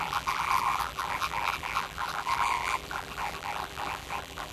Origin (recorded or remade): remade